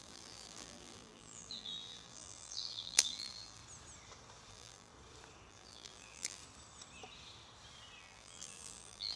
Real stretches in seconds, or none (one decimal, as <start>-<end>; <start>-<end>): 3.6-4.5; 4.9-5.5; 6.4-8.0